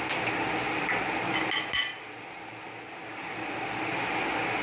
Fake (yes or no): no